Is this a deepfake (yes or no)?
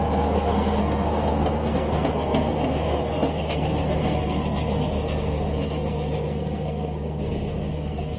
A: yes